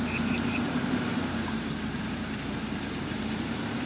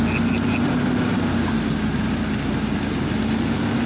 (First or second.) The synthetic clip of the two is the first